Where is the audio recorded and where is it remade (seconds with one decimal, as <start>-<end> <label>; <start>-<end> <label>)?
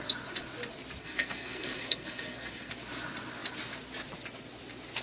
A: 0.0-1.0 recorded; 1.0-2.7 remade; 2.7-5.0 recorded